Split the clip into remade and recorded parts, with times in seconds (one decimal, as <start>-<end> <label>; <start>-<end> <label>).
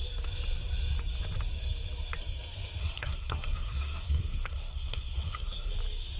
0.0-2.8 recorded; 2.8-5.7 remade; 5.7-6.2 recorded